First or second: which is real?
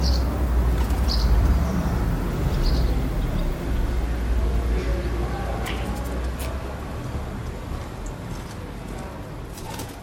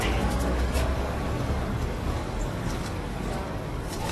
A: first